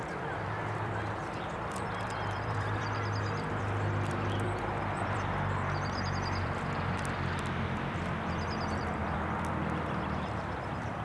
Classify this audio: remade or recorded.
remade